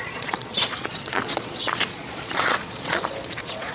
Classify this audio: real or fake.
fake